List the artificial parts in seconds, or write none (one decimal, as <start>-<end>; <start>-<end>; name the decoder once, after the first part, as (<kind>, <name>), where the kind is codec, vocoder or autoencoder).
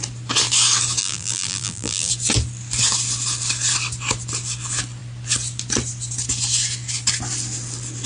1.0-2.1 (vocoder, BigVGAN v2)